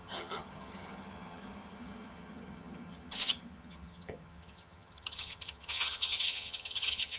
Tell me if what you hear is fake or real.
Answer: fake